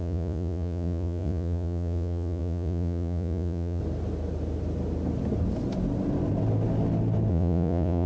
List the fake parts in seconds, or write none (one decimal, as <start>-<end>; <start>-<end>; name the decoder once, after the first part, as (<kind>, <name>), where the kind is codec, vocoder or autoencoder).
0.0-3.8 (vocoder, Vocos); 7.3-8.1